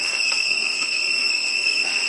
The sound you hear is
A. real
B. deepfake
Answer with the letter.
B